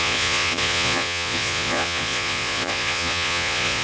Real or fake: fake